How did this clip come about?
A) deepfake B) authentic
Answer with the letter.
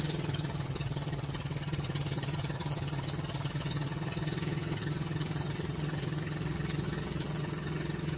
A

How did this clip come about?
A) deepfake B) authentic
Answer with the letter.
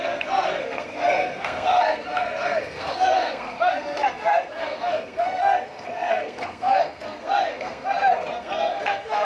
A